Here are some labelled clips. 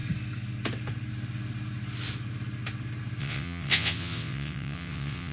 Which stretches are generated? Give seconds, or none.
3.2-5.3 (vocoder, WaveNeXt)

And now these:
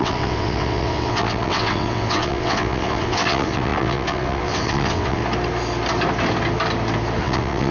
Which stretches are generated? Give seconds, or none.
0.0-5.2 (vocoder, WaveNeXt); 7.2-7.7

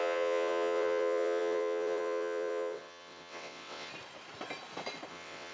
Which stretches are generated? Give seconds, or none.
0.0-3.9 (vocoder, WaveNeXt); 5.1-5.5

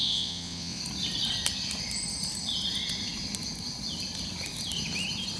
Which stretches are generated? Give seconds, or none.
0.0-0.8 (vocoder, WaveNeXt)

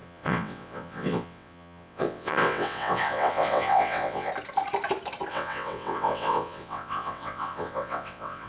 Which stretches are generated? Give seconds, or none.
0.0-4.3 (vocoder, WaveNeXt); 5.3-8.5

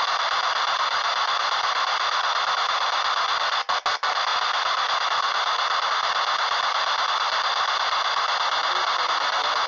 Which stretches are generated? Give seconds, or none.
none

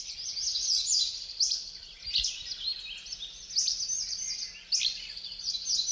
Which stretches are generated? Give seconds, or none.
none